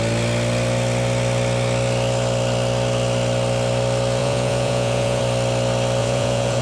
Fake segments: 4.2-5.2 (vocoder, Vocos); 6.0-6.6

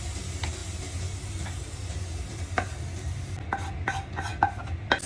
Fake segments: 0.0-0.6 (vocoder, BigVGAN v2); 3.7-5.1